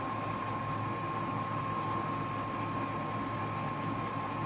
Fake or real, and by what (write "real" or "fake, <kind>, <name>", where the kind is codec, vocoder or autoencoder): real